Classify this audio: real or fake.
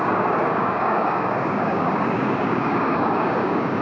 fake